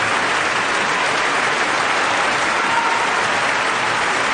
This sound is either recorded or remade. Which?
recorded